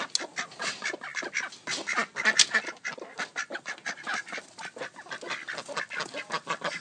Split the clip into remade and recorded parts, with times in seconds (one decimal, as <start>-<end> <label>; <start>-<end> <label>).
0.0-6.8 recorded